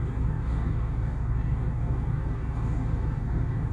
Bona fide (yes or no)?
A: no